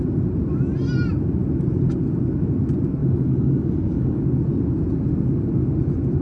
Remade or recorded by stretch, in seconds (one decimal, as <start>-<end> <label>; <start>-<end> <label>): 0.0-3.0 recorded; 3.0-4.2 remade; 4.2-6.2 recorded